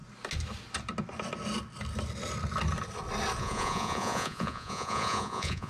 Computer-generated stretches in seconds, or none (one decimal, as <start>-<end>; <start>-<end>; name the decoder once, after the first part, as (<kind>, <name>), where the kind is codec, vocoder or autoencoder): 3.4-5.7 (vocoder, Vocos)